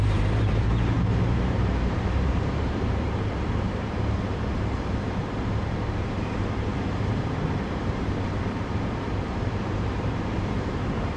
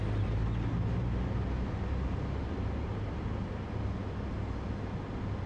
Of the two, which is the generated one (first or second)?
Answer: first